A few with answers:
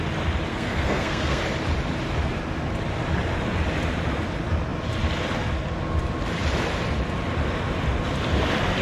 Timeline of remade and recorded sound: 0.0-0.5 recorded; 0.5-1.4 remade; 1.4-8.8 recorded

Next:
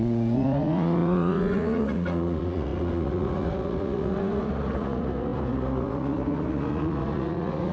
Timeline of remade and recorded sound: 0.0-7.7 remade

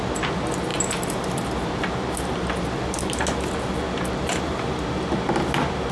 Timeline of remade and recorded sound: 0.0-5.9 recorded